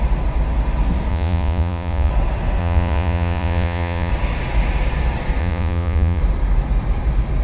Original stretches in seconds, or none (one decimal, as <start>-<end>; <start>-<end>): 0.0-1.1; 2.1-2.6; 4.1-5.4; 6.2-7.4